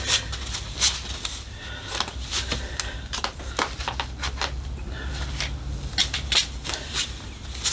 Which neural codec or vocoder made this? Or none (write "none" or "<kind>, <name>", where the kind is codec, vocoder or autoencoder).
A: none